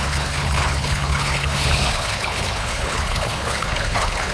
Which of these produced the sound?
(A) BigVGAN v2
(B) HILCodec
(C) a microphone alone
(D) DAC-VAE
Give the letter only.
B